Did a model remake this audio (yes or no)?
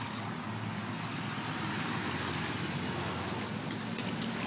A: no